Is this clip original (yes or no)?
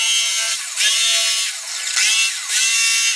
yes